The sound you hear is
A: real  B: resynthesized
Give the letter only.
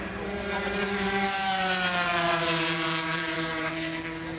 B